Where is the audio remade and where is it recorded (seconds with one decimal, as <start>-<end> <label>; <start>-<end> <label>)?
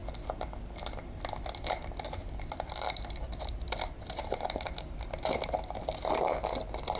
0.0-2.2 recorded; 2.2-4.9 remade; 4.9-7.0 recorded